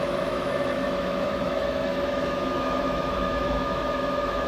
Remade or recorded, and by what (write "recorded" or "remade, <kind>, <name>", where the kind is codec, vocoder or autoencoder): remade, autoencoder, DAC-VAE